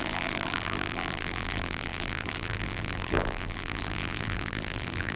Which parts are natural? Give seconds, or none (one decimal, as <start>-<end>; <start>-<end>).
none